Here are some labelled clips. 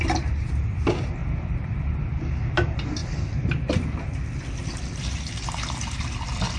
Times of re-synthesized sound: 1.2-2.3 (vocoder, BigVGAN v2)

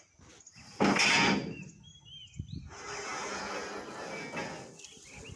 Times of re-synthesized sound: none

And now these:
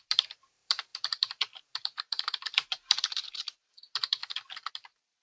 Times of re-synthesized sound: 0.0-4.2 (vocoder, BigVGAN v2); 4.7-5.2

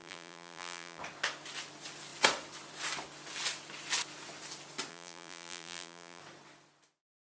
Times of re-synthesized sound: 0.0-1.0 (vocoder, BigVGAN v2); 4.9-6.2